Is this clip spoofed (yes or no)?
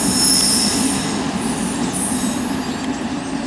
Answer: no